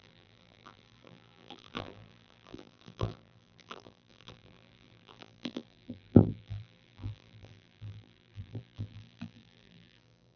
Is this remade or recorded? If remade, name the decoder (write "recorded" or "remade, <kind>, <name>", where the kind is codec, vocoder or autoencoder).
remade, vocoder, BigVGAN v2